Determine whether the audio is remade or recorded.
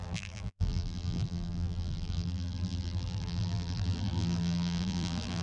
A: remade